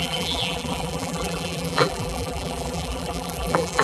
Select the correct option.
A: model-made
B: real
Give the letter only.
A